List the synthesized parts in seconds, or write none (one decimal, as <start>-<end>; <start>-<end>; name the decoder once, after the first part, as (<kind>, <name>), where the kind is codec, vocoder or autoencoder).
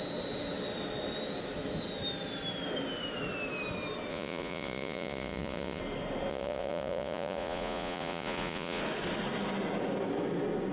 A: 4.1-5.8 (vocoder, Vocos); 6.3-8.8